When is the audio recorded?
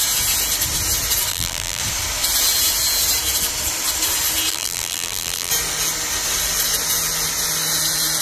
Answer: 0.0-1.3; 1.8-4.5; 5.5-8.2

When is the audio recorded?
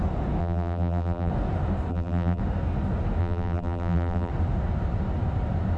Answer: 0.0-0.4; 1.3-1.9; 2.4-3.2; 4.3-5.8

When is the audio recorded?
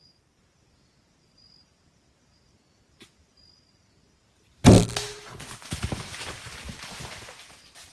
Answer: 0.0-7.9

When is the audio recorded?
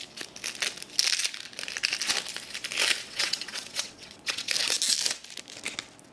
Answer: 0.0-3.0; 4.5-6.1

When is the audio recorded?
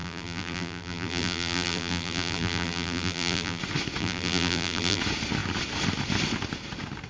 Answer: 3.6-4.0; 5.0-7.1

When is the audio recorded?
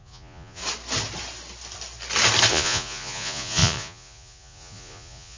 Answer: 0.6-2.5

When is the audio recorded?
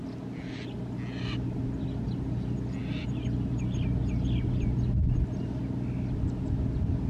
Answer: 0.0-7.1